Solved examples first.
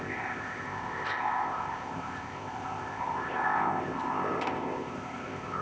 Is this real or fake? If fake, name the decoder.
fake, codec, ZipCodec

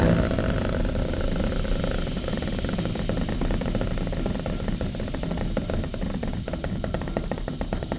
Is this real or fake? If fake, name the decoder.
real